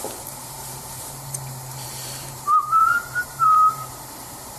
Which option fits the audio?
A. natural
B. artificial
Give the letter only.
B